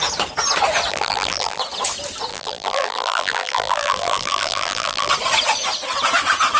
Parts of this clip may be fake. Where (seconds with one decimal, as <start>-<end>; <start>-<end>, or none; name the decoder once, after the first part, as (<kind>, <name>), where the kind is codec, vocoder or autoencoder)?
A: 0.9-1.6 (vocoder, BigVGAN v2); 2.3-5.1